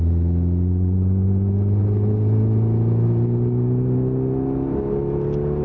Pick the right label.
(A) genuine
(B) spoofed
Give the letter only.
A